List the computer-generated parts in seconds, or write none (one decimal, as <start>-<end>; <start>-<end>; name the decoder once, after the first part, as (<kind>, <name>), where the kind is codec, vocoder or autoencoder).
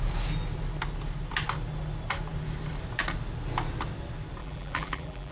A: 4.4-5.3 (vocoder, BigVGAN v2)